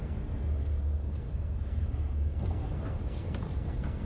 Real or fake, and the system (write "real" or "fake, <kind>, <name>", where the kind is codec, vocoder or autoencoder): fake, codec, SNAC